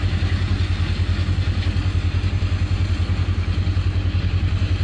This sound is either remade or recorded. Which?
recorded